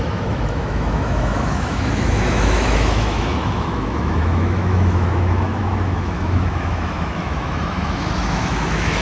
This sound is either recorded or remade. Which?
remade